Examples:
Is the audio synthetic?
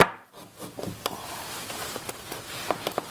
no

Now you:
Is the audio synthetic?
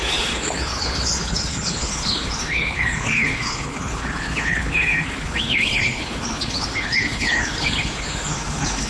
yes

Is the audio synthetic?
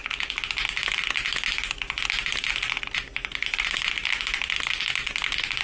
no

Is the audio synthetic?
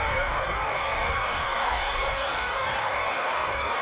yes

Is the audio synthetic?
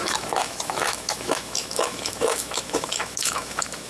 yes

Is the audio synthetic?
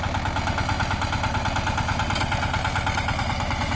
no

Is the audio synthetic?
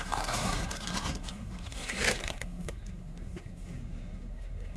yes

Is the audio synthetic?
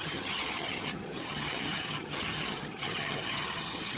yes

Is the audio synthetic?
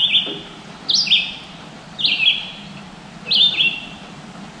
no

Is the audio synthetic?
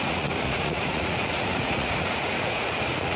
yes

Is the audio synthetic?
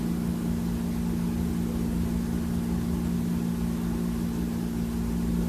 no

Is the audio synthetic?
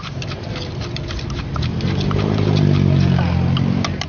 no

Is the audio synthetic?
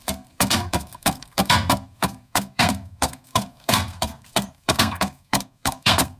yes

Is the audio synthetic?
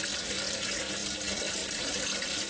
no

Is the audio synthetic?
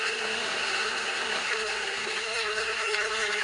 yes